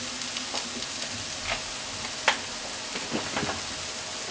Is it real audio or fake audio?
real